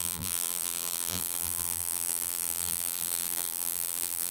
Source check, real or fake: fake